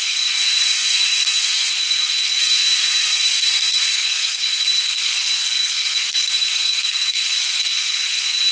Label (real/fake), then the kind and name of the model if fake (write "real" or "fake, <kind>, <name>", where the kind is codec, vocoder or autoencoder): fake, codec, SNAC